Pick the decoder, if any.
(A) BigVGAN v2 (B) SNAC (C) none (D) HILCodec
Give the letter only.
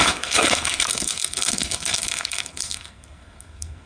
B